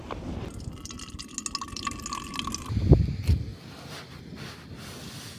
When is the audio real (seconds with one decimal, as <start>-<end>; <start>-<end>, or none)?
0.0-5.4